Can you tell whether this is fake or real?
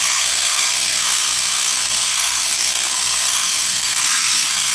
fake